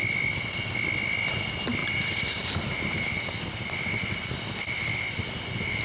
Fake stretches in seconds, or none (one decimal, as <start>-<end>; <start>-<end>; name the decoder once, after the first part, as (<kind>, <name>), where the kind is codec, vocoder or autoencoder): 1.8-3.7 (vocoder, BigVGAN v2)